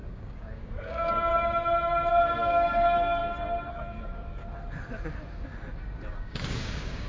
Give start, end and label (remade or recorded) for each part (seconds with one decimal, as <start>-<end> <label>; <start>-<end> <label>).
0.0-1.3 remade; 1.3-2.1 recorded; 2.1-3.2 remade; 3.2-3.7 recorded; 3.7-4.4 remade; 4.4-6.1 recorded; 6.1-7.1 remade